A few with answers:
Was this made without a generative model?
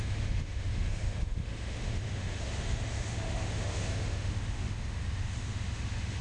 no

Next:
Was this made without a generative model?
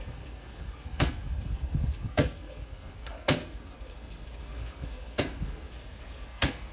no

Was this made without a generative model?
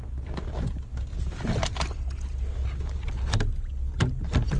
yes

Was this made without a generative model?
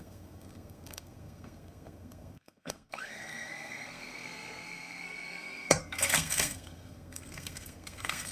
no